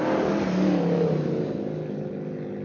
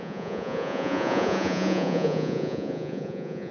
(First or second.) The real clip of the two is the first